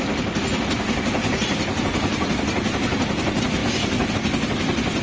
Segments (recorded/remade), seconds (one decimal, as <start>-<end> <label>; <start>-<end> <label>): 0.0-5.0 recorded

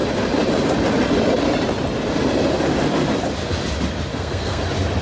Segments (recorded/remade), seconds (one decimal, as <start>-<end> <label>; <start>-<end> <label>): 0.0-4.1 recorded; 4.1-4.6 remade; 4.6-5.0 recorded

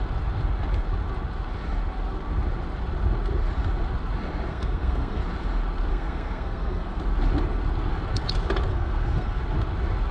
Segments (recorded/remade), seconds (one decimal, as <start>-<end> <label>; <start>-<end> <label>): 0.0-4.5 recorded; 4.5-5.2 remade; 5.2-5.9 recorded; 5.9-7.0 remade; 7.0-8.7 recorded; 8.7-9.4 remade; 9.4-10.1 recorded

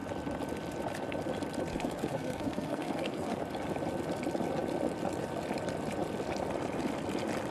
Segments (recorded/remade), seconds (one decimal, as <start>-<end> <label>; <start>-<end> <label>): 0.0-1.7 recorded; 1.7-3.4 remade; 3.4-7.5 recorded